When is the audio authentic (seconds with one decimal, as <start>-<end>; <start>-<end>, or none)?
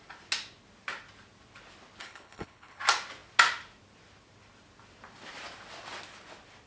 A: 0.0-2.0; 2.8-6.7